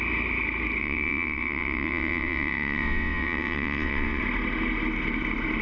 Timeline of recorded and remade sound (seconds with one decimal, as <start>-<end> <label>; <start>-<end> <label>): 0.0-0.8 recorded; 0.8-4.2 remade; 4.2-5.6 recorded